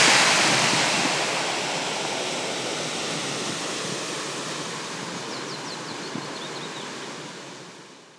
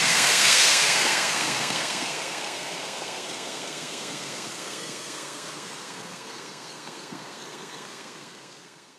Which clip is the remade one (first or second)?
second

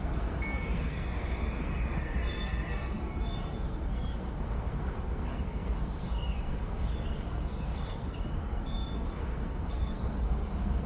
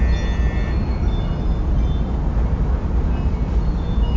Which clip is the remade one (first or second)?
first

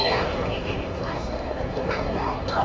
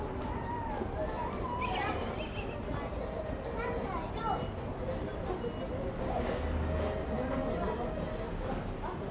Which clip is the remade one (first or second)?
first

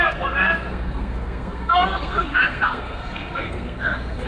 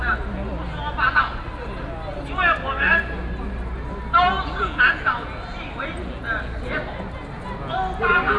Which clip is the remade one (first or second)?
first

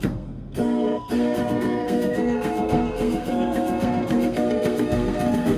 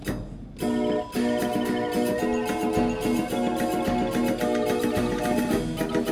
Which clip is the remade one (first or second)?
first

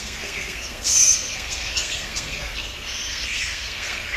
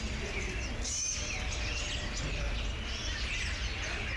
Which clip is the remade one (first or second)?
first